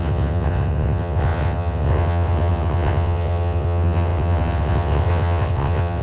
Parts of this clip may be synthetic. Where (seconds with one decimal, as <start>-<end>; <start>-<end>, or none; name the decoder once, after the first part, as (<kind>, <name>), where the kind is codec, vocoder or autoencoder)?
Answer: 0.0-6.0 (vocoder, WaveNeXt)